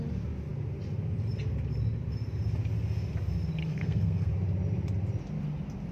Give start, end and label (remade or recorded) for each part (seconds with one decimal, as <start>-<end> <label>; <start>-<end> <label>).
0.0-3.6 recorded; 3.6-4.3 remade; 4.3-5.9 recorded